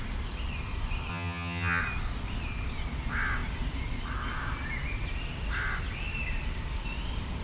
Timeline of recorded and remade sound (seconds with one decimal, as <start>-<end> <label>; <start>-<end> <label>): 0.0-1.1 recorded; 1.1-1.8 remade; 1.8-7.4 recorded